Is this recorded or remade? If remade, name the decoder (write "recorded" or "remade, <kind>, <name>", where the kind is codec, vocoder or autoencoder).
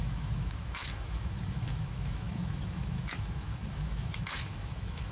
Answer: remade, autoencoder, DAC-VAE